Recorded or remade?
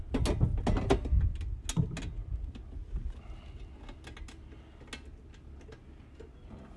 recorded